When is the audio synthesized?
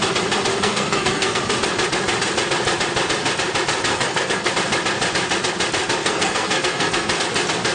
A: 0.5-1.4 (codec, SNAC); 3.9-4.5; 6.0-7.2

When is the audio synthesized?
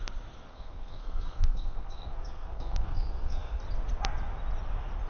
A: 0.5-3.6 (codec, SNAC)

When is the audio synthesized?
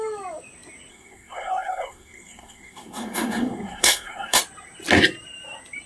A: 0.9-4.4 (codec, SNAC)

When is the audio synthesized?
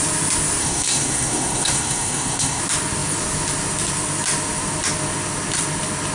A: 0.6-2.6 (codec, SNAC)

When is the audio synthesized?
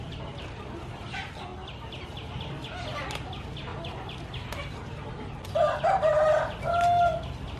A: none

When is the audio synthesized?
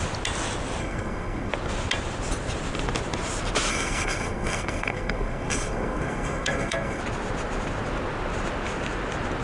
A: 0.8-1.5 (codec, SNAC); 3.7-7.0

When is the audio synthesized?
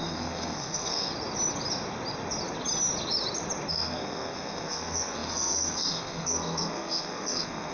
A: 0.0-1.1 (codec, SNAC); 3.7-7.7